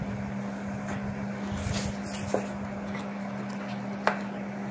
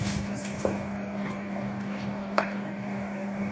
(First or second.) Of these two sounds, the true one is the first